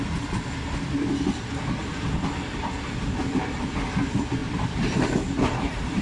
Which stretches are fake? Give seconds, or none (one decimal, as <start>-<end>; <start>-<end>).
4.4-6.0

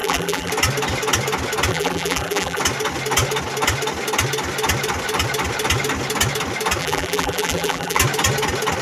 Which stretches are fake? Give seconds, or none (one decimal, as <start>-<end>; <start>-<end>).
0.0-0.5; 1.7-2.6; 6.8-8.0

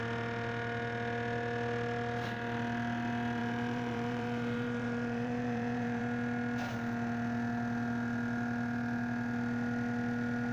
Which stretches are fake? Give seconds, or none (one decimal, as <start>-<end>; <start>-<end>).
3.4-6.0

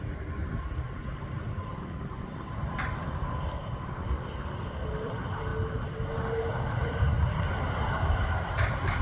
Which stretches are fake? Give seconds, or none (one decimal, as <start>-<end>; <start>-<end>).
0.0-5.5; 6.6-9.0

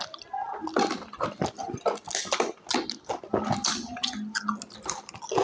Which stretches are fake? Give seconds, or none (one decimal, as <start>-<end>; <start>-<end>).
none

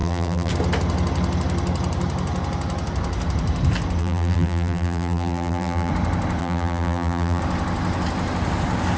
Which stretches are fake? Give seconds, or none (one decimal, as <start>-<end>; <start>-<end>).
0.0-0.5; 4.0-5.9; 6.4-7.4

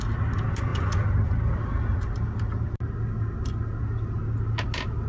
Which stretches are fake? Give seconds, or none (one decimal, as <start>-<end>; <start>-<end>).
none

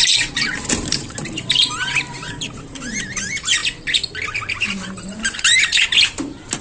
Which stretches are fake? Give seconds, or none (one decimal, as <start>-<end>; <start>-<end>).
0.0-3.6; 4.6-6.6